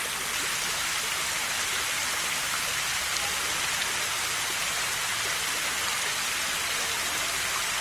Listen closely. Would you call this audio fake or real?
real